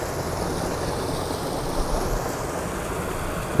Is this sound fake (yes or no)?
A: no